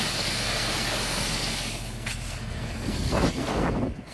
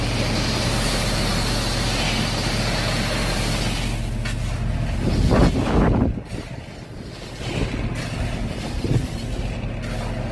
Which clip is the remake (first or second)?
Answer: first